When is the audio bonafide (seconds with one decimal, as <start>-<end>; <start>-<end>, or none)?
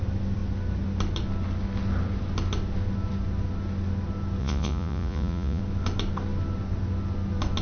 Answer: 0.0-4.4; 5.6-7.6